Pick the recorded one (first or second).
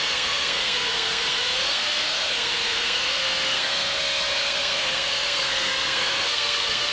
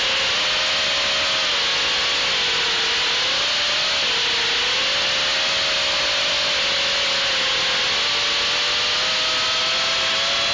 second